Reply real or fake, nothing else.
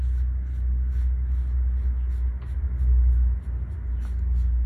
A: real